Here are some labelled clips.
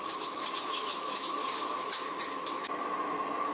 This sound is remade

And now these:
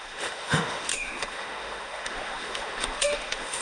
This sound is remade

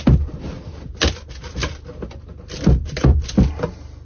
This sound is recorded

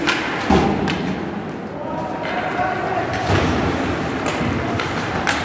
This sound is recorded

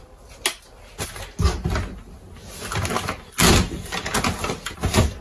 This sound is recorded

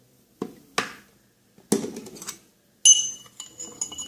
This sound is recorded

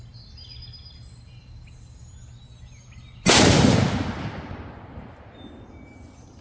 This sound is recorded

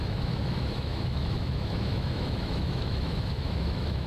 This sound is remade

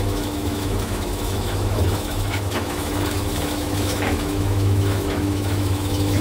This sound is remade